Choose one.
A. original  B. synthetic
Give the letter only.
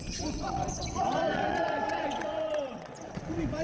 B